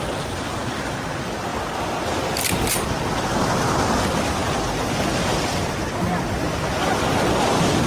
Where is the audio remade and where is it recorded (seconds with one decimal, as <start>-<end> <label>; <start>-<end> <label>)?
0.0-7.9 recorded